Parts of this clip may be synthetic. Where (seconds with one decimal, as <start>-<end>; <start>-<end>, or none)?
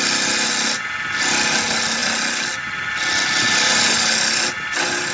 none